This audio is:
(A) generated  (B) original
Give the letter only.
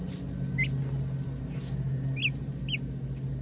B